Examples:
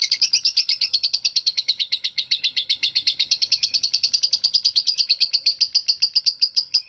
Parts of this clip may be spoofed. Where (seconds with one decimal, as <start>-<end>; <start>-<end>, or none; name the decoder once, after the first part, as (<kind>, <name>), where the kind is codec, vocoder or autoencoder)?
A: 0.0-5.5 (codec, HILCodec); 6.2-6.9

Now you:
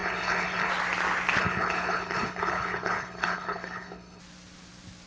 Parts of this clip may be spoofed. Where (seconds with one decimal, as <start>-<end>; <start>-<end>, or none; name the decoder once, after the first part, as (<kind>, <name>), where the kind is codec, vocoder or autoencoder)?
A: 0.0-0.7 (codec, HILCodec); 1.4-4.2

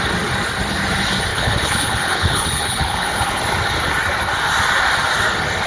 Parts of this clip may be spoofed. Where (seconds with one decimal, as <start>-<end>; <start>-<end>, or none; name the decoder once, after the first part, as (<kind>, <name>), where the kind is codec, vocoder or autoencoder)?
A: 1.3-3.4 (codec, HILCodec)

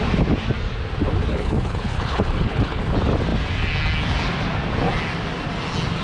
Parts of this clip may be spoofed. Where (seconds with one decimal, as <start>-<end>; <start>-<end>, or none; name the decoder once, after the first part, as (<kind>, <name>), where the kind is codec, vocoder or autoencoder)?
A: 1.3-2.8 (codec, HILCodec)

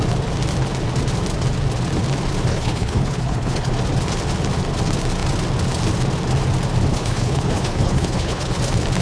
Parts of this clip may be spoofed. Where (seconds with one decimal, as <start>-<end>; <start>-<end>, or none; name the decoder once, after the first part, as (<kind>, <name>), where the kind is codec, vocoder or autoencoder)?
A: 2.5-3.7 (codec, HILCodec); 6.9-8.6

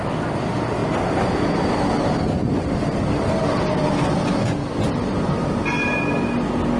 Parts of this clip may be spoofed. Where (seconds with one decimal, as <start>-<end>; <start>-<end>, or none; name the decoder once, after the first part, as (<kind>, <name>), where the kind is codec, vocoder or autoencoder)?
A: none

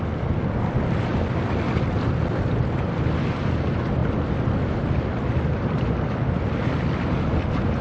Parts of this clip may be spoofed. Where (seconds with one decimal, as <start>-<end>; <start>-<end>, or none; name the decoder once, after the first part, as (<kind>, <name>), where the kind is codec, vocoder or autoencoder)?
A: none

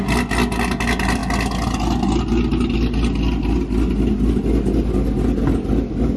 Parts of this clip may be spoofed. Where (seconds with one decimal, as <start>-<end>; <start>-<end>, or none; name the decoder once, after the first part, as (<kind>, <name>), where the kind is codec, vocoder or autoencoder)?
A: none